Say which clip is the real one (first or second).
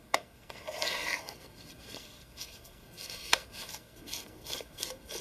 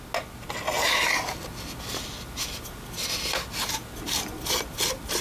second